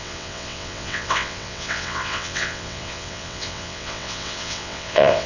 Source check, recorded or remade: remade